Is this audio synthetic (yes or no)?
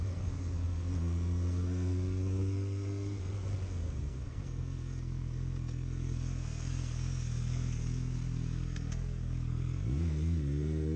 yes